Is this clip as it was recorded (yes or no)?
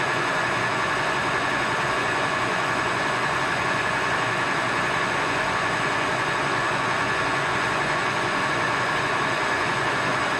no